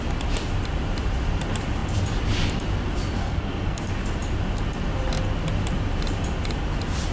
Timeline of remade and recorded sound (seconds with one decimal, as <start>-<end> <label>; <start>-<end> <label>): 0.0-3.2 recorded; 3.2-3.8 remade; 3.8-7.1 recorded